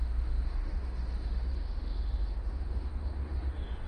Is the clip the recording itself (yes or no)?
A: no